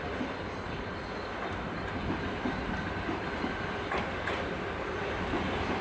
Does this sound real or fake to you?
real